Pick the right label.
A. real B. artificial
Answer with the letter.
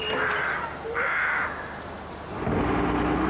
A